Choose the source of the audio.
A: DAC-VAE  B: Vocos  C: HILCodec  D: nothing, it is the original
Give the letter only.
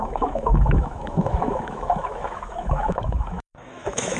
A